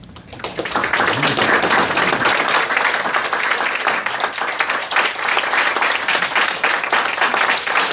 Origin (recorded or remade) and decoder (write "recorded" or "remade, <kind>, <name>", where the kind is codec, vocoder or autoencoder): recorded